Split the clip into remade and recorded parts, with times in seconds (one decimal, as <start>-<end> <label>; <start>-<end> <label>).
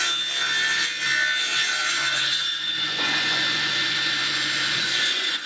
0.0-1.9 recorded; 1.9-5.5 remade